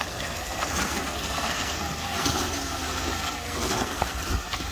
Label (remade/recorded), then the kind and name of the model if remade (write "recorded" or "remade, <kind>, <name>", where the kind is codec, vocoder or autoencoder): remade, codec, SNAC